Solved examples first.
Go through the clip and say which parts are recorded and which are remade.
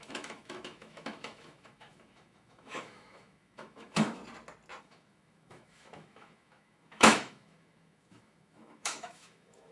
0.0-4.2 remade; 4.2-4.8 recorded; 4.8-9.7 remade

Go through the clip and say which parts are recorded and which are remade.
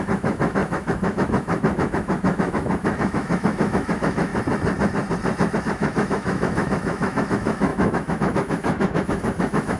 0.0-4.3 remade; 4.3-5.6 recorded; 5.6-9.8 remade